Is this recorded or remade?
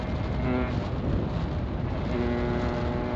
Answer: recorded